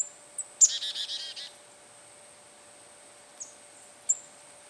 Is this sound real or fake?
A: real